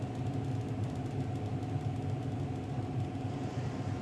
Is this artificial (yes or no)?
no